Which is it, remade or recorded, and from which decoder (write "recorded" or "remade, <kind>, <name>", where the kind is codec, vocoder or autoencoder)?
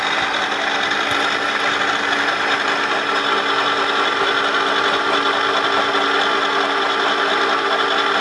recorded